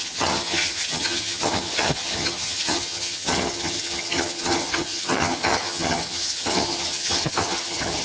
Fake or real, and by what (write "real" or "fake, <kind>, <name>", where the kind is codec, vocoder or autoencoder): fake, vocoder, HiFi-GAN